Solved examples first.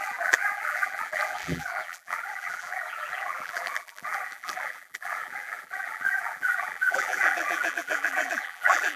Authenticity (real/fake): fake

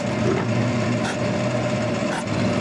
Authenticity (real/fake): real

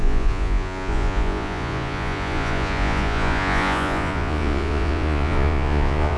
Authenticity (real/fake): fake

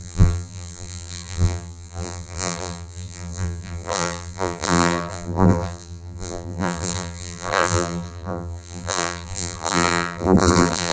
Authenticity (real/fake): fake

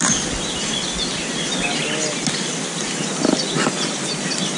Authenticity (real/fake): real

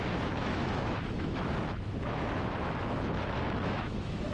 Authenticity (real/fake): fake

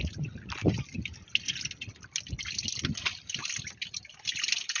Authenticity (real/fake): real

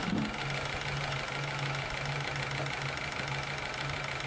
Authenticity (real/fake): real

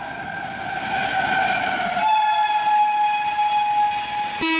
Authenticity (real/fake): real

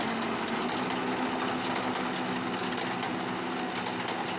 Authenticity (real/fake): real